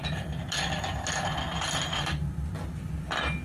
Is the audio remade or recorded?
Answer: recorded